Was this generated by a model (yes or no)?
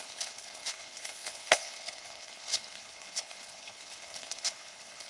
yes